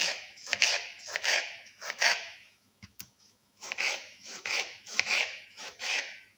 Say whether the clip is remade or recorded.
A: remade